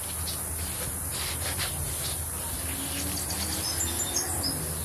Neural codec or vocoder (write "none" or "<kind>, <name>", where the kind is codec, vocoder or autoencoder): none